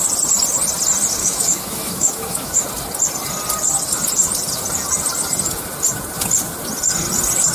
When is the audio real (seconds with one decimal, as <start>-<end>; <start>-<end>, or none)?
0.0-1.2; 2.6-7.5

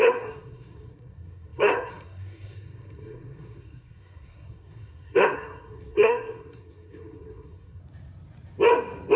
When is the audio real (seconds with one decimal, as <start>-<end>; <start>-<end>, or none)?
7.8-9.2